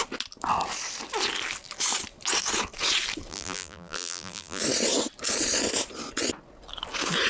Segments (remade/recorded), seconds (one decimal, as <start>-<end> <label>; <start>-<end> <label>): 0.0-3.3 recorded; 3.3-4.6 remade; 4.6-7.3 recorded